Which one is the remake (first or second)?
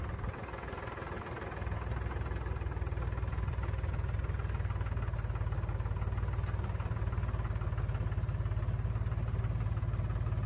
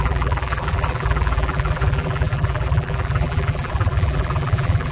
second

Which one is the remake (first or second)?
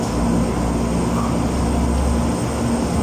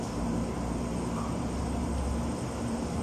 second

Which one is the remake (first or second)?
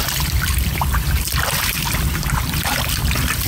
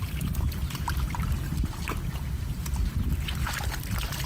first